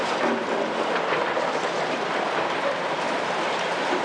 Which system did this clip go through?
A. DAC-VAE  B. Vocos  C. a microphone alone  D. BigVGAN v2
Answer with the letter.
D